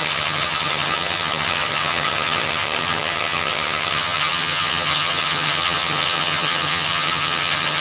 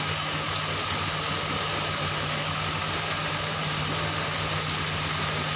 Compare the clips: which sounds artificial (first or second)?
first